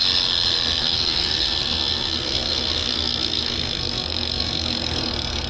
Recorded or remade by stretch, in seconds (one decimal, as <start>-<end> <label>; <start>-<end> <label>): 0.0-0.8 recorded; 0.8-5.5 remade